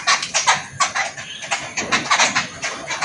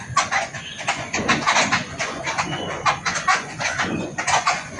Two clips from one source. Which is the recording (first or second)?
first